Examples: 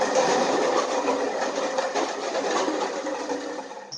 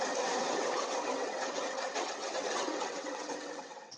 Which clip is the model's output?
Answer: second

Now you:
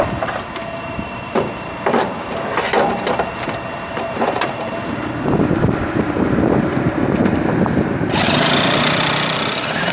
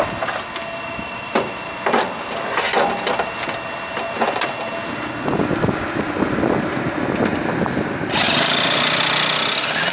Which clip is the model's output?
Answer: first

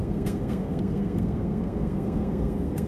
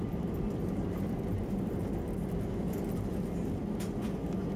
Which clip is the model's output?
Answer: first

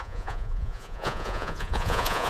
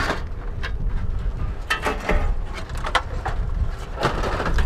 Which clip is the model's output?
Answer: first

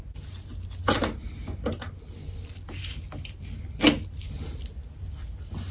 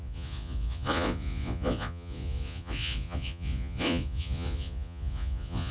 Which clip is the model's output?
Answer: second